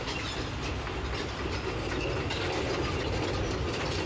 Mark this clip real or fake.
real